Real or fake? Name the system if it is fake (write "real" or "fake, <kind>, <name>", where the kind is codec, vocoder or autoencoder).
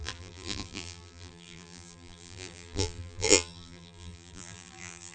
fake, vocoder, BigVGAN v2